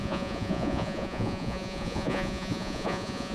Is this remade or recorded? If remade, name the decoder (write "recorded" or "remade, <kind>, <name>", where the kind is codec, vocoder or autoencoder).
remade, vocoder, Vocos